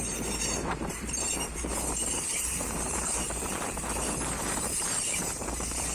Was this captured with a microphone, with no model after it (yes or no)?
no